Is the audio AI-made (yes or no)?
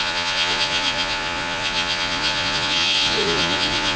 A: yes